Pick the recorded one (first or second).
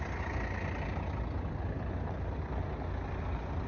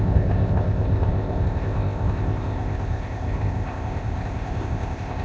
first